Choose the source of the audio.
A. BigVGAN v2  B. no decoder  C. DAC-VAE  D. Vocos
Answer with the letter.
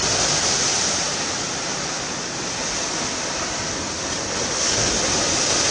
B